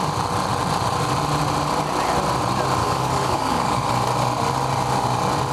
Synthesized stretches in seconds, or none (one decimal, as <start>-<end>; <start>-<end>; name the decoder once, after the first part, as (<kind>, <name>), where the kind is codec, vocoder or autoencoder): 2.8-3.9 (codec, DAC)